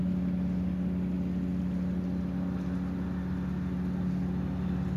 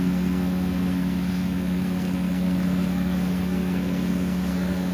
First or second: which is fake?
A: second